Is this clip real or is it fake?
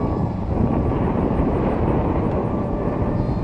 fake